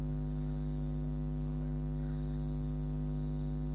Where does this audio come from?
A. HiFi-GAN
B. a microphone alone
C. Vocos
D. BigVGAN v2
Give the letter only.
B